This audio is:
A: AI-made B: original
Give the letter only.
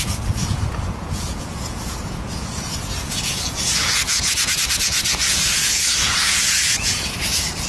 A